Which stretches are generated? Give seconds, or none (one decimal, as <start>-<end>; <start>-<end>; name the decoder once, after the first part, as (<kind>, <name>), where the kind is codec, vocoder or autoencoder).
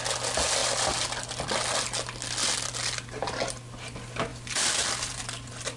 0.6-1.3 (vocoder, BigVGAN v2); 4.3-5.2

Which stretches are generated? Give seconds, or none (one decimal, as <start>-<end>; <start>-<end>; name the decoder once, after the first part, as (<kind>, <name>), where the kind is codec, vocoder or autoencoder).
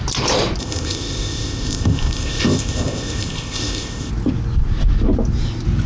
0.6-4.1 (codec, ZipCodec)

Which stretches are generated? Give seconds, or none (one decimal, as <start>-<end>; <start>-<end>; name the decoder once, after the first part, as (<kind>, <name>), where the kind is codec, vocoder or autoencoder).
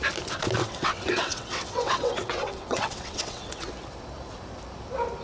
0.6-3.7 (vocoder, WaveNeXt)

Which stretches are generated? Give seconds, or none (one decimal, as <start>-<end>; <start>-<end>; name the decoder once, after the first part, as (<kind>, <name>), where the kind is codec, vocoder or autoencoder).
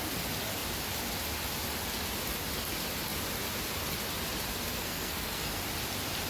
4.5-5.6 (codec, SNAC)